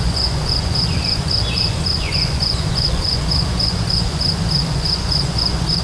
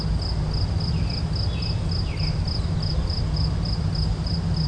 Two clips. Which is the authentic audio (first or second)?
second